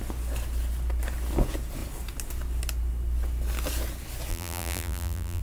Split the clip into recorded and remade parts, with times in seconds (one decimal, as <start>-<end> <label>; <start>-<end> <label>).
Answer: 0.0-4.3 recorded; 4.3-5.4 remade

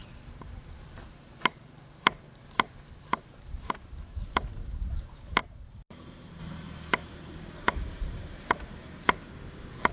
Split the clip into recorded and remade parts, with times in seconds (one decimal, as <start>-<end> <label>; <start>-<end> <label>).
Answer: 0.0-9.9 remade